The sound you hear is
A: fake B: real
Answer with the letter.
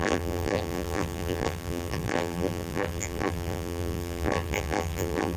A